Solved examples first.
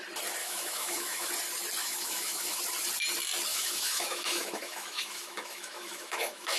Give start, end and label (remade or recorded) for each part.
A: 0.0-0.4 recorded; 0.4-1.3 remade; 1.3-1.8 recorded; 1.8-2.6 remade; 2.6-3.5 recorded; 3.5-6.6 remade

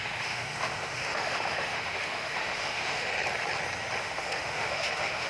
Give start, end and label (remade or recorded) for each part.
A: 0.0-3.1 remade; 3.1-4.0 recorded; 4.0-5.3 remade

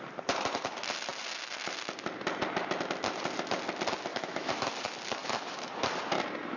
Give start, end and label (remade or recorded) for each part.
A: 0.0-4.1 recorded; 4.1-4.7 remade; 4.7-5.2 recorded; 5.2-5.7 remade; 5.7-6.6 recorded